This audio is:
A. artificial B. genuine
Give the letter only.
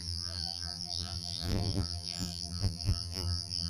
A